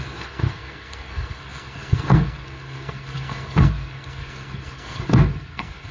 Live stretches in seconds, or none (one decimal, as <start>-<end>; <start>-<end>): none